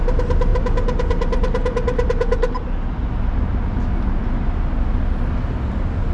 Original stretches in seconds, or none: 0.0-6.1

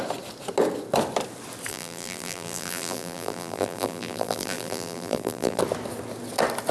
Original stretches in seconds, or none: 0.0-1.7; 5.6-6.7

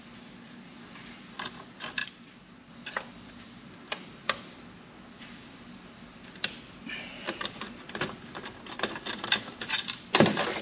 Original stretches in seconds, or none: 0.0-10.6

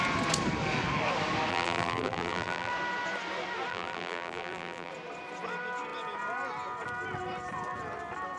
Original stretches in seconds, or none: 0.0-1.5; 2.7-3.7; 4.9-8.4

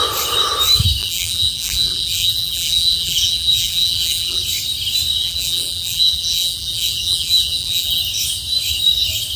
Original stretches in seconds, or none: 0.0-1.0; 4.4-5.2; 8.0-9.4

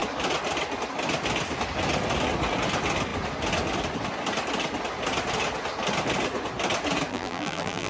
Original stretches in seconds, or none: 0.0-7.1

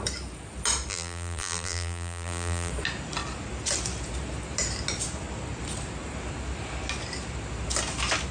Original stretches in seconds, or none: 0.0-0.9; 2.7-8.3